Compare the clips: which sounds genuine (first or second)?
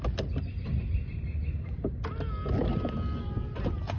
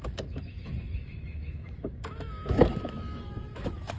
first